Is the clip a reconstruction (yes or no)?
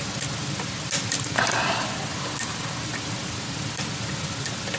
no